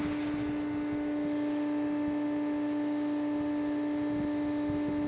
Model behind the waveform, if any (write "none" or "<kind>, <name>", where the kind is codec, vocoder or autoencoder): none